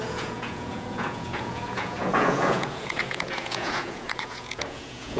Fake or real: fake